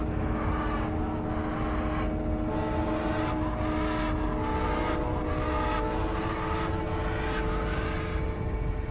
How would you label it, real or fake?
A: real